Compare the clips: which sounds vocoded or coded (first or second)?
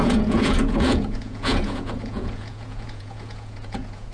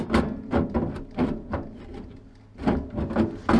first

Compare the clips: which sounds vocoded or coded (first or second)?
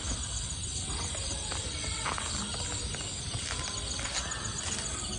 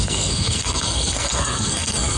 second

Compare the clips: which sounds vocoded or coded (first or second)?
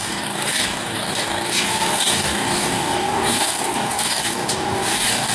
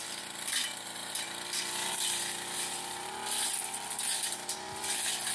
first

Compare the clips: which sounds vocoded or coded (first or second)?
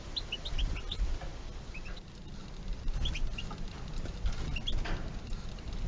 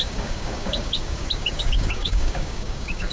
second